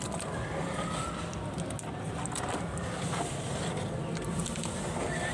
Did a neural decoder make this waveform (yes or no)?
no